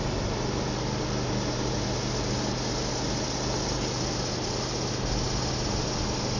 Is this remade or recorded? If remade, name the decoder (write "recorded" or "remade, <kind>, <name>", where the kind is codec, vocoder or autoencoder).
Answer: recorded